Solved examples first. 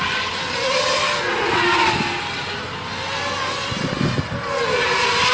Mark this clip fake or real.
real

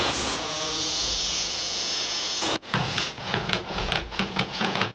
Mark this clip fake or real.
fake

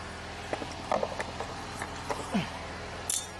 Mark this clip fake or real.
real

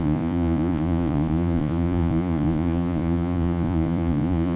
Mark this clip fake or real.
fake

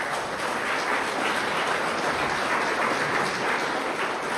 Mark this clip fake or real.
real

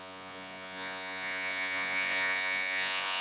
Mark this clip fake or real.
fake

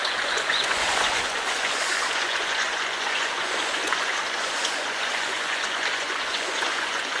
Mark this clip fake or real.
fake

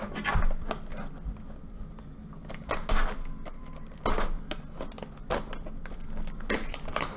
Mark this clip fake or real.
real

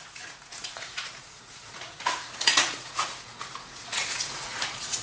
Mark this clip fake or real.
fake